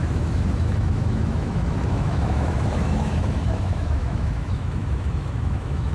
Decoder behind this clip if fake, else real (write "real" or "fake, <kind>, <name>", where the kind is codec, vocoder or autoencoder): fake, autoencoder, DAC-VAE